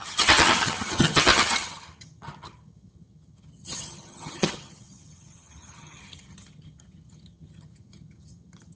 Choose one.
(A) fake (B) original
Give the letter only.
A